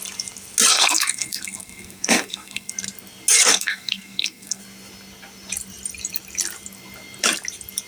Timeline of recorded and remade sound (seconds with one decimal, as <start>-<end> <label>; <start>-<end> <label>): 0.0-0.7 recorded; 0.7-2.7 remade; 2.7-3.5 recorded; 3.5-4.6 remade; 4.6-7.9 recorded